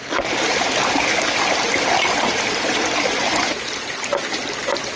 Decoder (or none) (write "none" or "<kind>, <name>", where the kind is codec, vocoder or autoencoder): none